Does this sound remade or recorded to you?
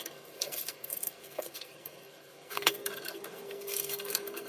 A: remade